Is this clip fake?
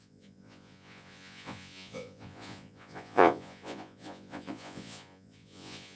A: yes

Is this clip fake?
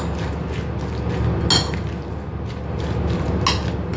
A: no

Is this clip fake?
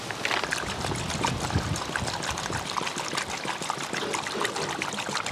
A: no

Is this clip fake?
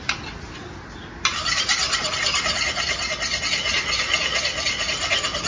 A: no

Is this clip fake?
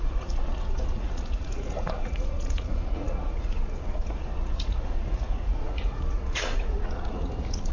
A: yes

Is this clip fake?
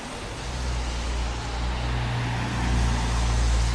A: no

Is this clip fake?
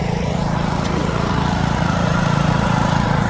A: yes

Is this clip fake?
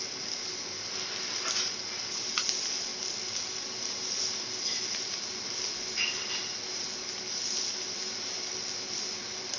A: no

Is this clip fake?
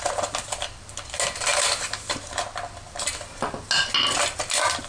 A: no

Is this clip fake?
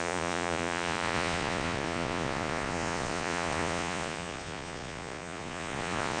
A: yes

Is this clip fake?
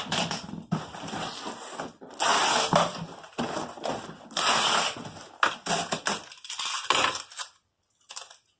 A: no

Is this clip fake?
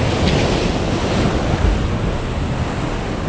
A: no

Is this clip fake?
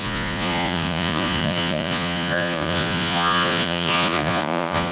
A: yes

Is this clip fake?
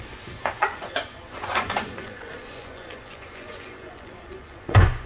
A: yes